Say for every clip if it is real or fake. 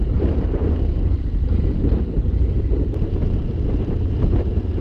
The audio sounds fake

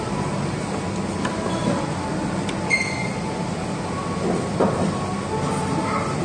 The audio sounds real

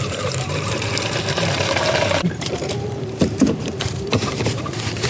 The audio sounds fake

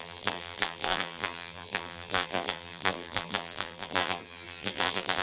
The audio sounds fake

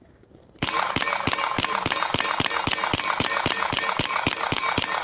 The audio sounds fake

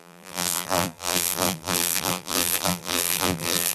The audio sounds fake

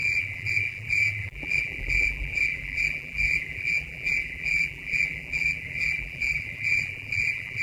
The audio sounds fake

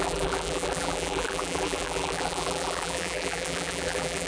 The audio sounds fake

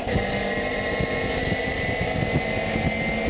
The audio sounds real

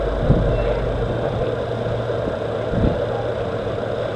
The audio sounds real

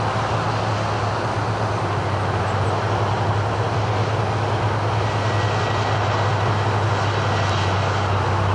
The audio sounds real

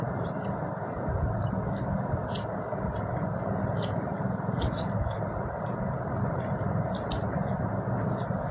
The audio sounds real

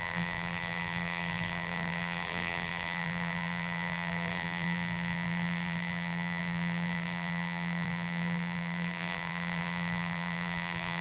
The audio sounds fake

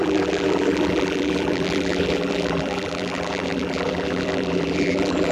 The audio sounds fake